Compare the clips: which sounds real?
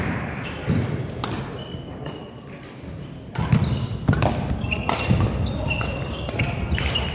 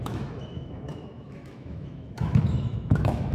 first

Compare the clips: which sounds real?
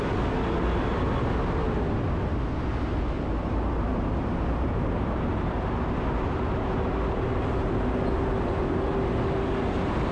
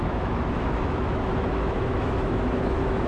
first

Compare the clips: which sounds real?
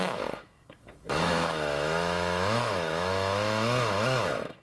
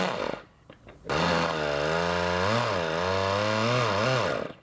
second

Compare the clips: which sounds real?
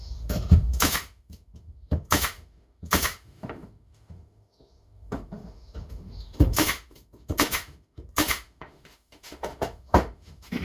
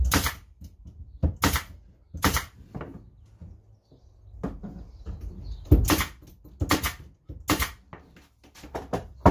second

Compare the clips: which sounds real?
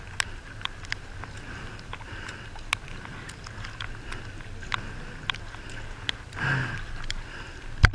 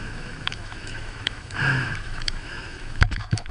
first